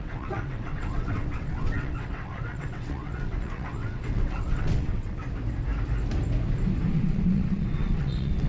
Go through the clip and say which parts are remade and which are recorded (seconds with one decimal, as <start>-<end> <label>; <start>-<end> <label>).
0.0-5.2 remade; 5.2-6.9 recorded; 6.9-8.5 remade